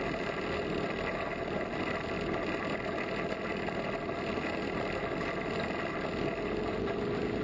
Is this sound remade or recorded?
recorded